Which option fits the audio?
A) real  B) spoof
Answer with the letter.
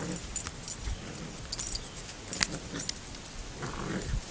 A